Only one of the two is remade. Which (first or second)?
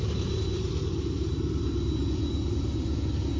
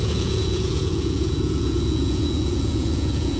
second